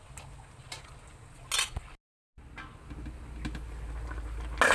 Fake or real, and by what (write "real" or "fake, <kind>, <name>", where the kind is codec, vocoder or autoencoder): real